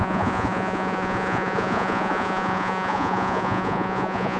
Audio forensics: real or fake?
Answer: fake